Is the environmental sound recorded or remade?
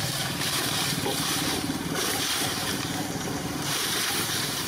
remade